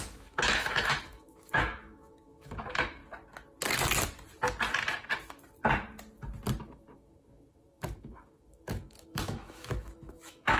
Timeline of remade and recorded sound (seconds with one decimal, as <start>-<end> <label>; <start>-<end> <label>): 0.0-3.0 remade; 3.0-6.6 recorded; 6.6-10.6 remade